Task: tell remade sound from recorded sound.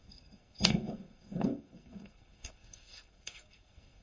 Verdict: remade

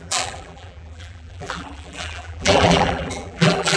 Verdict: remade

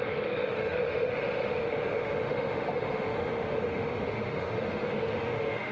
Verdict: remade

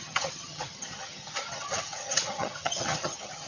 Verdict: remade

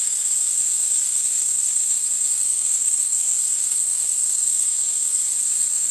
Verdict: remade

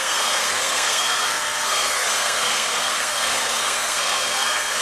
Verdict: remade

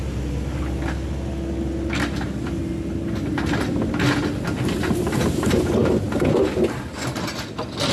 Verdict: recorded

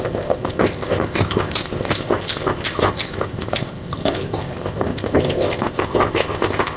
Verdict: remade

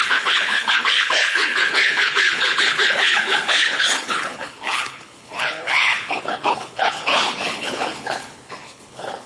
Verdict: remade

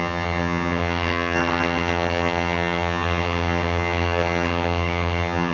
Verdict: remade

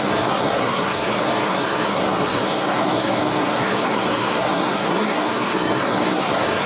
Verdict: remade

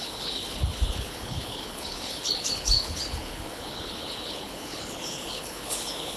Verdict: remade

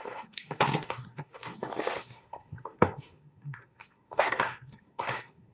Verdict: remade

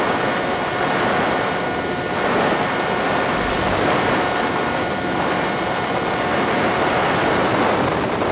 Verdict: recorded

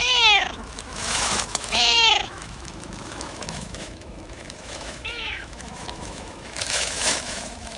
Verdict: remade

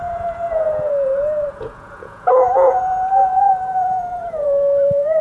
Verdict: remade